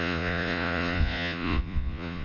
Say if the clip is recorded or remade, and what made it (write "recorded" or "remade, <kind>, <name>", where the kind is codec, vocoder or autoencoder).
remade, vocoder, Vocos